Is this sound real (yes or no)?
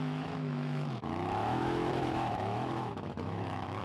no